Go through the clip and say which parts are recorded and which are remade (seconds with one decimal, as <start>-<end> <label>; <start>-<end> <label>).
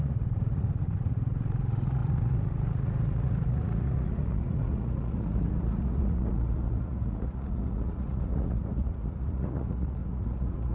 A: 0.0-10.7 remade